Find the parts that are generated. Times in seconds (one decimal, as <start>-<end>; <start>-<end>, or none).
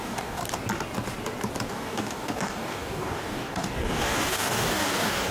0.0-0.4; 1.7-5.3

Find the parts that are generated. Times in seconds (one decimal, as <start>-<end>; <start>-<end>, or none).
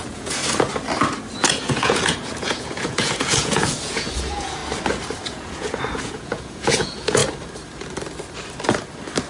0.0-0.4; 1.5-4.6; 5.2-7.2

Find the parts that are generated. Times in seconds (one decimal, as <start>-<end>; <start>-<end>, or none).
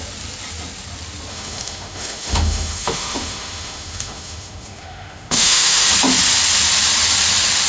1.3-5.9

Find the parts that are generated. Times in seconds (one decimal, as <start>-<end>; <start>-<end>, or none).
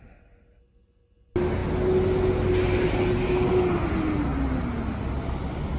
none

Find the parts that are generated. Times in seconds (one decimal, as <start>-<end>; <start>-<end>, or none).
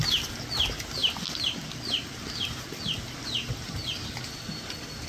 1.0-4.1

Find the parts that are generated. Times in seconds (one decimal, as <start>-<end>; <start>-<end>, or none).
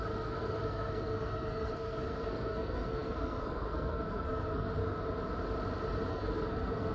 0.0-4.8; 6.1-6.9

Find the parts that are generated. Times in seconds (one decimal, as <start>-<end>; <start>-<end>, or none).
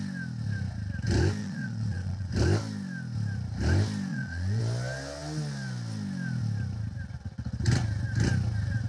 1.4-2.3; 4.1-4.6